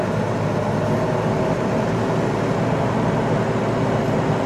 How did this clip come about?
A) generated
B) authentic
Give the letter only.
B